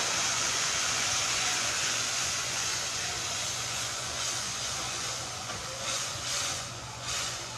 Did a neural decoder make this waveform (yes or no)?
yes